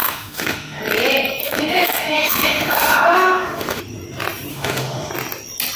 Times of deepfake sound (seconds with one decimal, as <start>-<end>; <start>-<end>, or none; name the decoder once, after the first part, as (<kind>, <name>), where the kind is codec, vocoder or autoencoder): 0.0-0.8 (autoencoder, DAC-VAE); 1.4-3.8; 4.5-5.1